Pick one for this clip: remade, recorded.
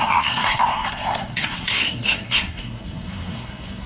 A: remade